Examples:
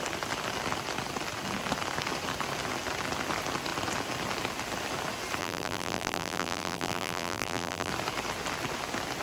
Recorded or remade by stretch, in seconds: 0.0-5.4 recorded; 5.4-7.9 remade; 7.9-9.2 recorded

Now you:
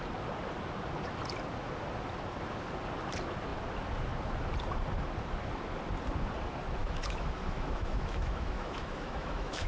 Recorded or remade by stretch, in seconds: 0.0-6.8 recorded; 6.8-9.7 remade

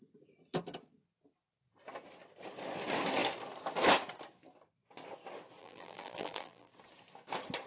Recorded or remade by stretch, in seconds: 0.0-5.6 recorded; 5.6-6.7 remade; 6.7-7.7 recorded

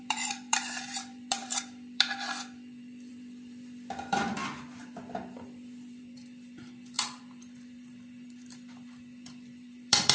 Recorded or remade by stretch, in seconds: 0.0-10.1 remade

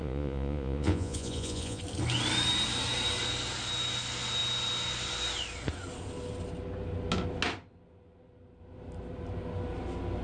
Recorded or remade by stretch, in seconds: 0.0-1.8 remade; 1.8-10.2 recorded

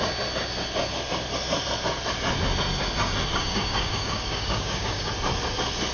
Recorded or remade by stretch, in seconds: 0.0-3.3 recorded; 3.3-5.1 remade; 5.1-5.9 recorded

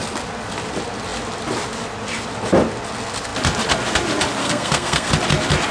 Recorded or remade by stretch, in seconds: 0.0-4.4 recorded; 4.4-5.1 remade; 5.1-5.7 recorded